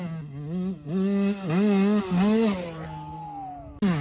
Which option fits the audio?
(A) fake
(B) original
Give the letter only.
B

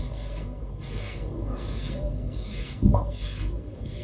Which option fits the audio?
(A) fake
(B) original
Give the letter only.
A